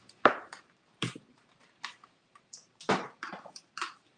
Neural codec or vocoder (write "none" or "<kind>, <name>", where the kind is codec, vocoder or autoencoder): vocoder, BigVGAN v2